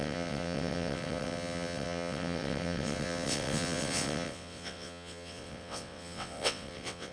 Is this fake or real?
fake